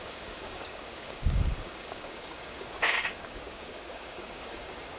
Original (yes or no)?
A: no